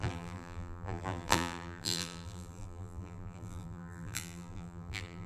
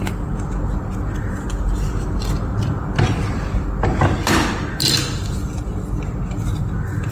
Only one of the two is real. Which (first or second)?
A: second